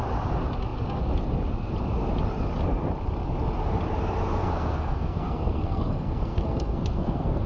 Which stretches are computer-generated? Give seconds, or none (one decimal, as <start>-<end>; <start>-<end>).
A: 4.3-7.5